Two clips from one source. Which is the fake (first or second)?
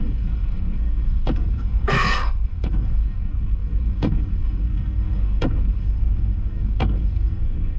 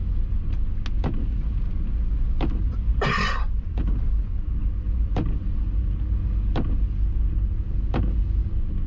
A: first